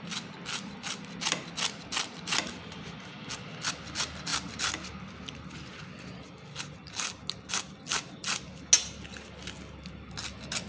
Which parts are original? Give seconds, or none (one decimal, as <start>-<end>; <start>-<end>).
0.0-10.7